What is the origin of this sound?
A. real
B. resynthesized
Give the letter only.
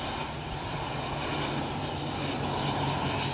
A